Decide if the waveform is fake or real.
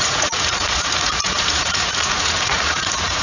fake